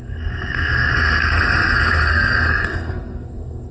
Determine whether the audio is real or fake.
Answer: fake